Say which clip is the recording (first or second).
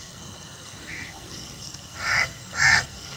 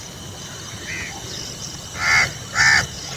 second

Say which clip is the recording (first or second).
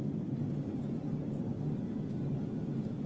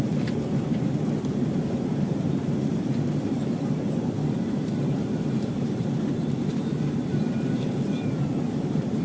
first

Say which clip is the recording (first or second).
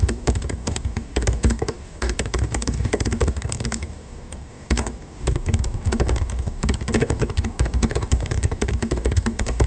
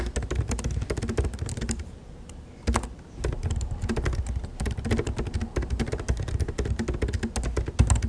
second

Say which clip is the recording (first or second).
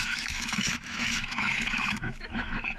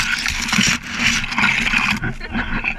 second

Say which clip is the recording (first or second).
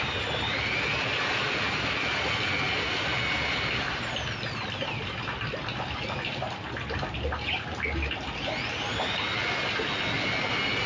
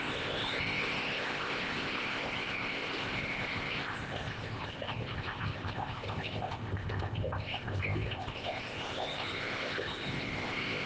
first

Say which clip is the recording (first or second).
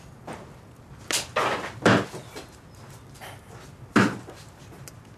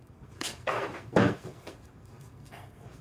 first